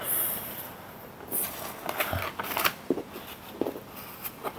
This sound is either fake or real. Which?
real